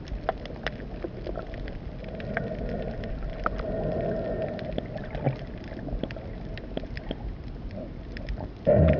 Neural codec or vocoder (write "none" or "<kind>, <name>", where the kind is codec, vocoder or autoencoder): none